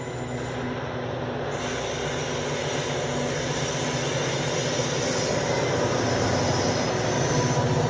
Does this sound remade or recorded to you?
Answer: recorded